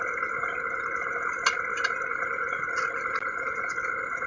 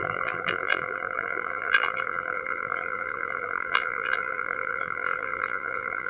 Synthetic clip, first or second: second